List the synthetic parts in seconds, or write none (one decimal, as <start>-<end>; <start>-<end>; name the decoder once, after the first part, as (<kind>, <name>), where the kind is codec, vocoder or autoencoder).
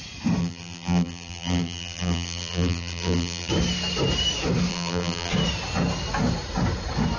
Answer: 0.4-3.5 (vocoder, BigVGAN v2); 4.7-5.3